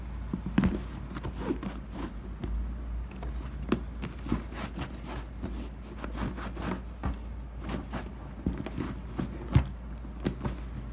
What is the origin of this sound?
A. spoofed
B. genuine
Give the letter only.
B